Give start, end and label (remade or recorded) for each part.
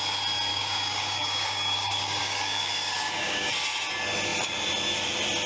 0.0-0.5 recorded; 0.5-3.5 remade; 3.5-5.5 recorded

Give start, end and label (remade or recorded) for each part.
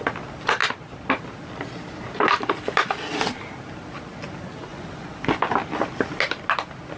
0.0-4.7 recorded; 4.7-5.3 remade; 5.3-7.0 recorded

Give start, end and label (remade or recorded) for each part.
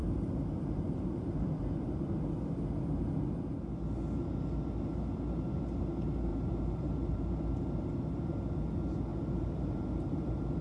0.0-2.2 remade; 2.2-6.3 recorded; 6.3-8.3 remade; 8.3-9.1 recorded; 9.1-10.6 remade